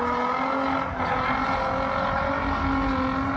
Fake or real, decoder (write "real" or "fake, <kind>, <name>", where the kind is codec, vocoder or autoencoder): real